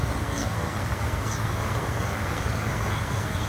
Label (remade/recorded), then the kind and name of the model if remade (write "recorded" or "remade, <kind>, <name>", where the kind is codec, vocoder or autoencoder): remade, codec, SNAC